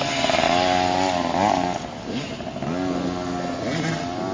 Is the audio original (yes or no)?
yes